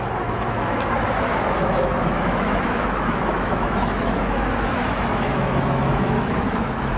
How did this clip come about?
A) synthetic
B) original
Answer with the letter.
A